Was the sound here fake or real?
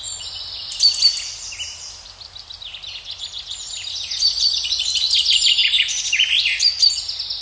real